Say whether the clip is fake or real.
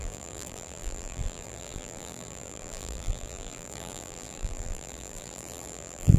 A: fake